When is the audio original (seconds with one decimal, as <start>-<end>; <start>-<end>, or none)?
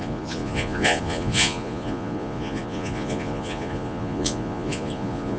none